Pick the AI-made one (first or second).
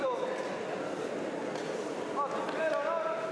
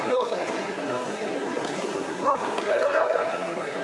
second